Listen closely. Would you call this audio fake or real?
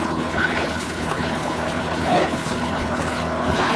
fake